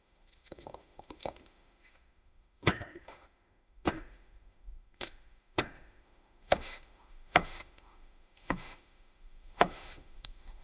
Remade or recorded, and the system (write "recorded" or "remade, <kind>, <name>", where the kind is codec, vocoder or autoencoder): remade, autoencoder, DAC-VAE